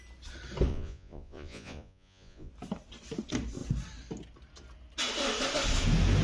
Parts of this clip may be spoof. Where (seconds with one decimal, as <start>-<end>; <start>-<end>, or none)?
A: 0.7-2.5